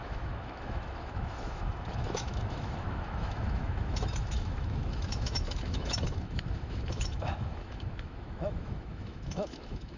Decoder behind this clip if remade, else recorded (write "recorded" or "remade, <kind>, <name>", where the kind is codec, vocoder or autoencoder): remade, autoencoder, DAC-VAE